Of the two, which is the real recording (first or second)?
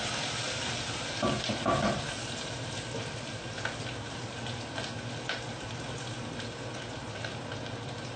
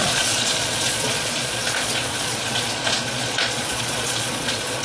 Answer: first